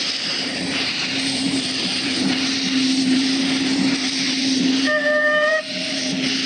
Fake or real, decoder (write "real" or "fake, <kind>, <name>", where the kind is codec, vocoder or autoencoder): fake, vocoder, BigVGAN v2